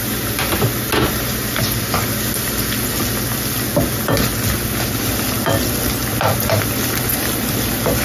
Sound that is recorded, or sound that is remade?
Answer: recorded